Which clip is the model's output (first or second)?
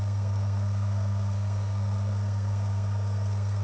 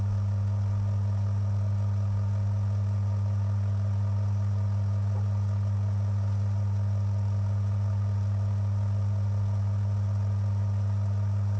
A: first